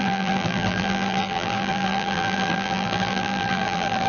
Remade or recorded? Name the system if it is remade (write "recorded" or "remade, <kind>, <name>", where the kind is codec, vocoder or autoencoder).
remade, vocoder, BigVGAN v2